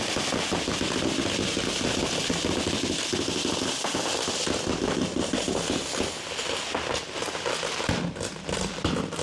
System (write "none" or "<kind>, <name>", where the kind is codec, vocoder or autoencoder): none